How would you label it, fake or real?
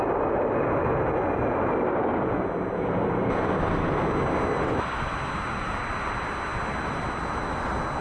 real